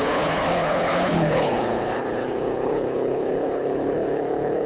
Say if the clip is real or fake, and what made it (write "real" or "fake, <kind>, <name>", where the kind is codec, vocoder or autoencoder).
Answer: fake, codec, HILCodec